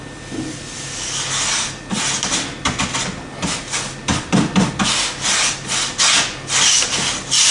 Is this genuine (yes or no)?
yes